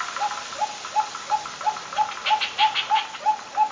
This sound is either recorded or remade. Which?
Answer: recorded